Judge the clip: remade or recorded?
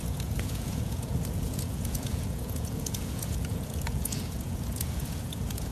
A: remade